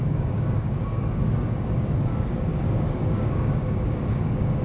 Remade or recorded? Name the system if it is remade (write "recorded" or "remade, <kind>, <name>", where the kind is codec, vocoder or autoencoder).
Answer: remade, codec, DAC